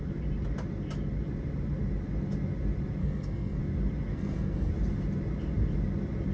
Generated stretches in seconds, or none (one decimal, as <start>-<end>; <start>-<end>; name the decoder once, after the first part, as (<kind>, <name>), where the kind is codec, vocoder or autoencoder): 3.0-3.6 (codec, SNAC); 4.1-4.7